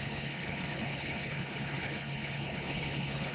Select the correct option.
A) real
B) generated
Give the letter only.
B